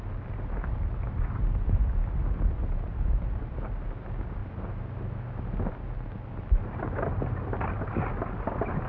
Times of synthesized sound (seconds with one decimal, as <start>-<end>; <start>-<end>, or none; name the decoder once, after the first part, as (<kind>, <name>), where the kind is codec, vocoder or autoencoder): none